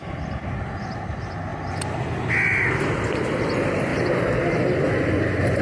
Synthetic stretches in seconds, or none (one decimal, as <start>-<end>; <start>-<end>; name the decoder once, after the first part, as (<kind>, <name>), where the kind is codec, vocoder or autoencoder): 3.9-4.6 (vocoder, BigVGAN v2)